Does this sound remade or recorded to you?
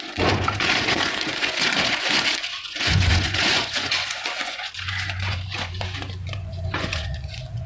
remade